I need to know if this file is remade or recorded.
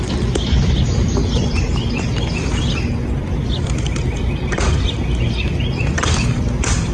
recorded